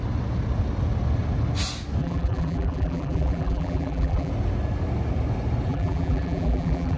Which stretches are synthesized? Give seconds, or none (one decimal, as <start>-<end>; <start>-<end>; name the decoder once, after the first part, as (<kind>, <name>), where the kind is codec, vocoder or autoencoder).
2.0-4.3 (vocoder, BigVGAN v2); 5.7-7.0